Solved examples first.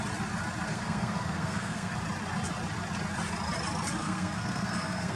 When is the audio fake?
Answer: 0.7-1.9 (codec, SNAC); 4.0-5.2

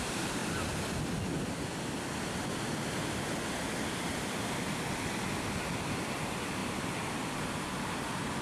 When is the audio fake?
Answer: none

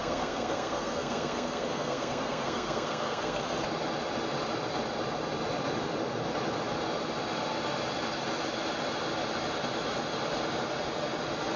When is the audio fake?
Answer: 0.0-3.4 (codec, SNAC)

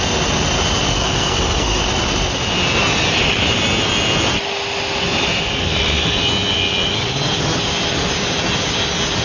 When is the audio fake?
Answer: 0.9-1.8 (codec, SNAC)

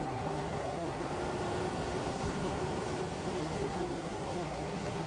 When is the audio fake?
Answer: 0.0-1.1 (codec, SNAC); 2.1-2.6; 3.4-5.1

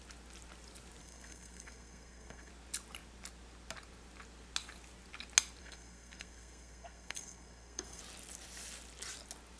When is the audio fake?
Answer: 1.0-2.5 (codec, SNAC); 5.6-8.0

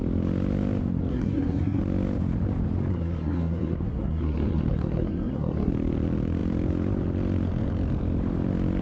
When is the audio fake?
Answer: 1.1-1.8 (codec, SNAC); 2.9-5.7